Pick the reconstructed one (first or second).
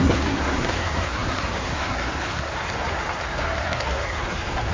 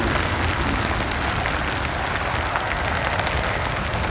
first